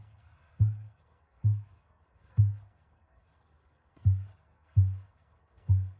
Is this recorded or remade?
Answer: remade